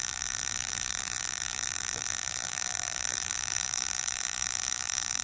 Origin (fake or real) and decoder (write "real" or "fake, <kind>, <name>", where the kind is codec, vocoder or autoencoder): fake, vocoder, BigVGAN v2